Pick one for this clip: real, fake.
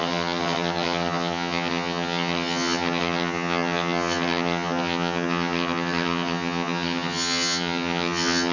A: fake